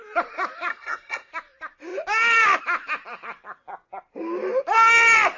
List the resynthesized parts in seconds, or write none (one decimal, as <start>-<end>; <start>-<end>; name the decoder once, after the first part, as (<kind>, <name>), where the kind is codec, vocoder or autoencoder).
0.7-1.3 (codec, SNAC)